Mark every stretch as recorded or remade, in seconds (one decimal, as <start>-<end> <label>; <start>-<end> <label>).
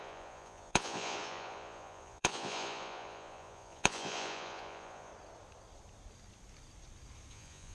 0.0-5.1 remade; 5.1-7.3 recorded; 7.3-7.7 remade